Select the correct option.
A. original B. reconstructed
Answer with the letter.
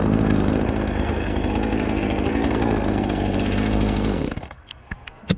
B